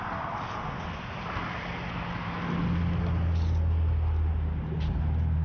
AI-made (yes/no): no